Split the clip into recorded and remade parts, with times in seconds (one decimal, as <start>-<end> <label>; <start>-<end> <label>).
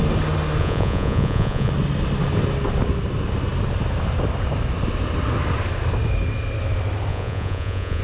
0.0-0.6 recorded; 0.6-1.7 remade; 1.7-7.1 recorded; 7.1-8.0 remade